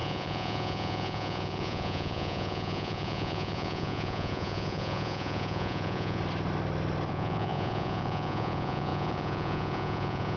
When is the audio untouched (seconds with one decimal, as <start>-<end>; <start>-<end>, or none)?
6.2-7.1